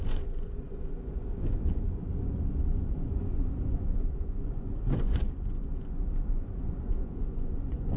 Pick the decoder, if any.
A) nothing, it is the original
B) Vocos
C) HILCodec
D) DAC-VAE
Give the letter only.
B